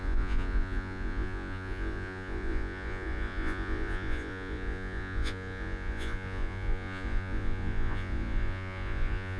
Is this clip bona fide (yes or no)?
no